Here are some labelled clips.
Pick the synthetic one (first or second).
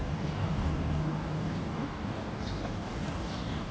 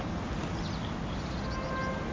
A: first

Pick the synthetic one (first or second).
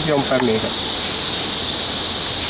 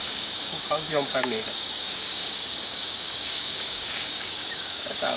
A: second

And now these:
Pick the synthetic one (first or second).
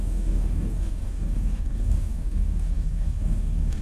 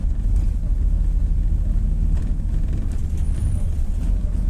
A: first